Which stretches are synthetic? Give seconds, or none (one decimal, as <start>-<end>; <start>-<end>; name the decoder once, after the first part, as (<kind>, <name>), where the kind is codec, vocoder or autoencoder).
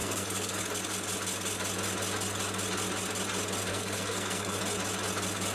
0.0-0.6 (codec, SNAC); 3.7-4.6